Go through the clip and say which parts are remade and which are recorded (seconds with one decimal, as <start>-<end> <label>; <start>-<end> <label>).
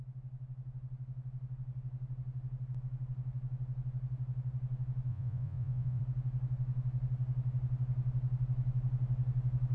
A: 0.0-5.1 recorded; 5.1-6.0 remade; 6.0-9.7 recorded